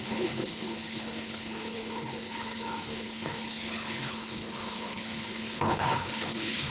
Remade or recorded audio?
remade